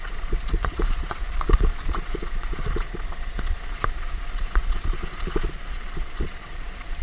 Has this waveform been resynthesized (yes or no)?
yes